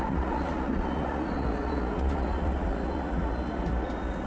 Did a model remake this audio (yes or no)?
yes